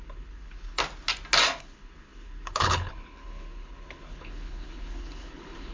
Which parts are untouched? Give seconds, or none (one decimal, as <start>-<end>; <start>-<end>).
0.8-1.6